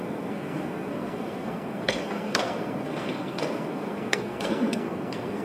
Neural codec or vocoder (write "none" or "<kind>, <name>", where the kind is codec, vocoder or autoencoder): codec, SNAC